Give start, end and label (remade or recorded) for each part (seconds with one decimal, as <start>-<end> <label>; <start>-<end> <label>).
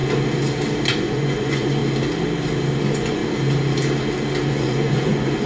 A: 0.0-0.9 recorded; 0.9-1.8 remade; 1.8-2.8 recorded; 2.8-3.2 remade; 3.2-4.5 recorded; 4.5-5.5 remade